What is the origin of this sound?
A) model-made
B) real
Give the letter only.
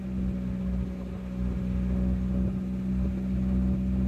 B